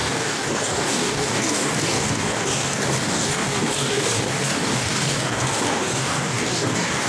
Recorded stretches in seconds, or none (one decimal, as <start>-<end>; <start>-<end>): none